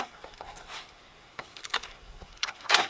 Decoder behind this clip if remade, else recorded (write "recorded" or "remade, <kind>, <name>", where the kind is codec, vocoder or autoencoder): remade, codec, SNAC